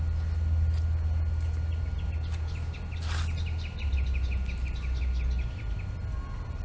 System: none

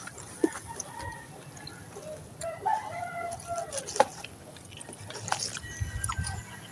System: none